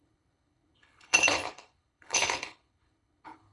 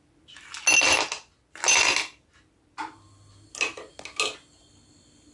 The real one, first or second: second